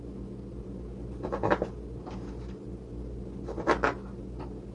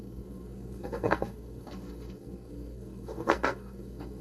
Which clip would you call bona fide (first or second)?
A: first